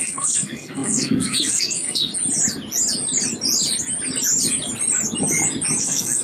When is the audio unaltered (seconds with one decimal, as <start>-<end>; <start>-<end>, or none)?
2.1-5.8